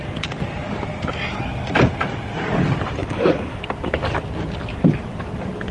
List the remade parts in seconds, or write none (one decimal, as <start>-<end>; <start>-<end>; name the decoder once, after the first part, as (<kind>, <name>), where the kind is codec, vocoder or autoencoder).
3.0-3.6 (codec, DAC)